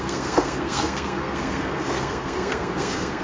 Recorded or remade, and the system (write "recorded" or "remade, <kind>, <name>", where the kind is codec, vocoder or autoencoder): remade, codec, SNAC